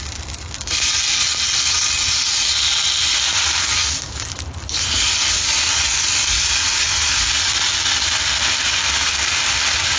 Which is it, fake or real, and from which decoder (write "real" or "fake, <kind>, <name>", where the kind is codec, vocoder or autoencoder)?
real